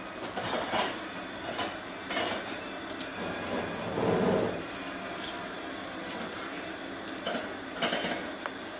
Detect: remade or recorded recorded